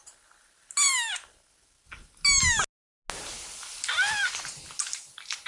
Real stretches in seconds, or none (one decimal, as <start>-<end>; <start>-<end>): 0.0-5.5